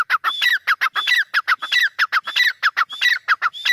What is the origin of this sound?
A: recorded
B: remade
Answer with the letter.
A